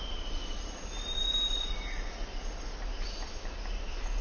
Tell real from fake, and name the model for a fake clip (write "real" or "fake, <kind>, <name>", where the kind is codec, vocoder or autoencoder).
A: real